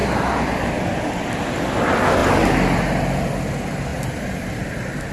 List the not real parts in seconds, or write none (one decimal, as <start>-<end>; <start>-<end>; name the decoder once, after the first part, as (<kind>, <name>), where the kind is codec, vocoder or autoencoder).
3.9-5.1 (vocoder, BigVGAN v2)